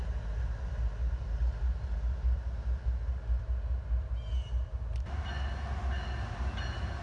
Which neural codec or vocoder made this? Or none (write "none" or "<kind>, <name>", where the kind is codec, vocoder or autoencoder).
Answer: none